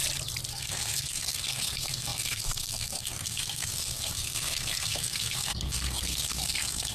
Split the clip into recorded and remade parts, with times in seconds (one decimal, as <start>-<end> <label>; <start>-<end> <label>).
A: 0.0-0.5 recorded; 0.5-6.9 remade